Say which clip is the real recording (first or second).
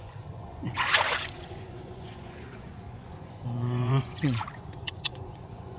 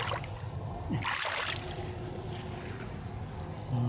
second